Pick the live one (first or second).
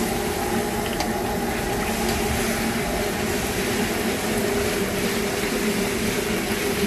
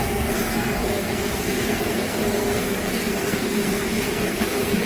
first